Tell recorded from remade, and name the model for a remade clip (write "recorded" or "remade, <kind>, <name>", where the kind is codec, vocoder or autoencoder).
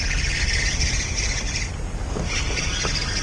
recorded